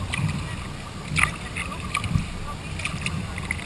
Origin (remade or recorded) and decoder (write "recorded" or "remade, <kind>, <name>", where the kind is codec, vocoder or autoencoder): recorded